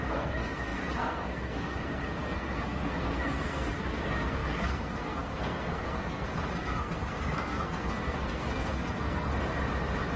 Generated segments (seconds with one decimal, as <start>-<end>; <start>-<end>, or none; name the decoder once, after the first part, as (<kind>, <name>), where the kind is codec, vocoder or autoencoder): 0.0-9.3 (codec, SNAC)